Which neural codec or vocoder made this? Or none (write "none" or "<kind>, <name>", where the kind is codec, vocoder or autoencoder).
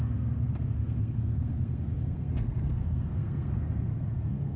codec, SNAC